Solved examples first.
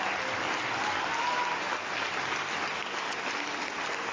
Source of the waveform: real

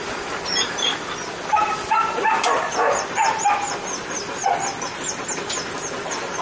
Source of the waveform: real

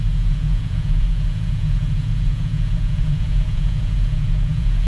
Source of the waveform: fake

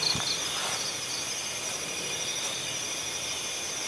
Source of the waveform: real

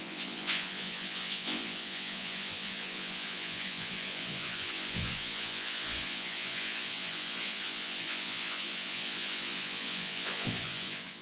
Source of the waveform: fake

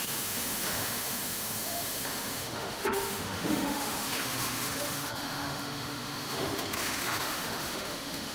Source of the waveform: fake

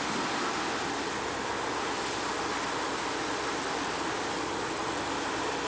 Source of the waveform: real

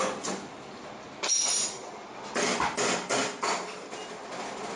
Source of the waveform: real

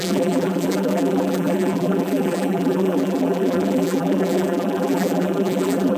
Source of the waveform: fake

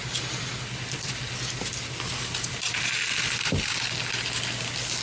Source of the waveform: real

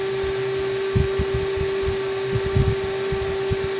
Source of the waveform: real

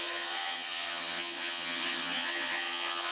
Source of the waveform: fake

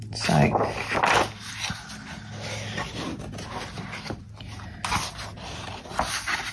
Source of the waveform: real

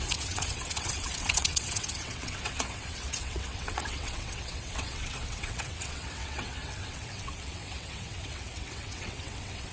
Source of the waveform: fake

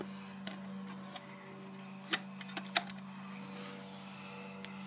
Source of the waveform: real